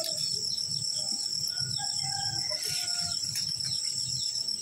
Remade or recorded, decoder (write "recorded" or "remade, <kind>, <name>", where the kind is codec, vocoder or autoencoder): recorded